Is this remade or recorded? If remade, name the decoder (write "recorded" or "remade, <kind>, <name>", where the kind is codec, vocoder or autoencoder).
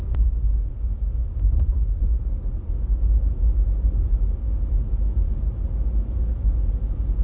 recorded